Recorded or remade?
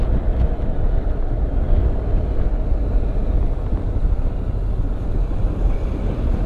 recorded